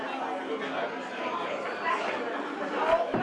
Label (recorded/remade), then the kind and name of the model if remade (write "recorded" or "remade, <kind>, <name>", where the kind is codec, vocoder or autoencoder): recorded